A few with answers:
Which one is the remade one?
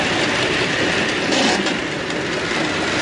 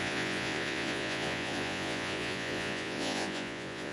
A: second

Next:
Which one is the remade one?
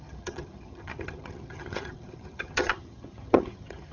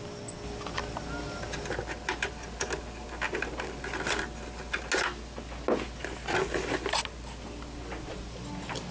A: first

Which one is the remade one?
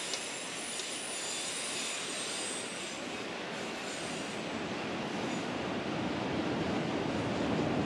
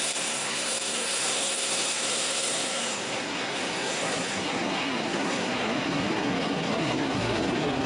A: second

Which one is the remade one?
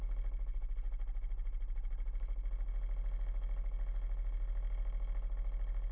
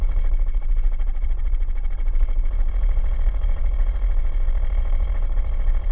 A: second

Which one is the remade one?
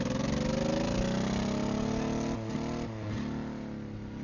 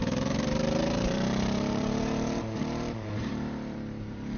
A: second